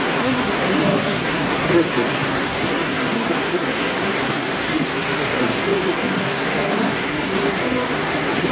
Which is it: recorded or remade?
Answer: remade